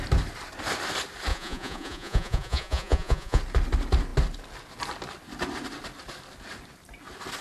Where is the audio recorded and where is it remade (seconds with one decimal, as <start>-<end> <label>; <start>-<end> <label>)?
0.0-1.3 recorded; 1.3-3.4 remade; 3.4-7.4 recorded